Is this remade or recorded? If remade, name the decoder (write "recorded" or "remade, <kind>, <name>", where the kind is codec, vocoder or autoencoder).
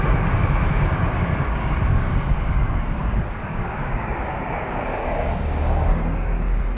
remade, codec, DAC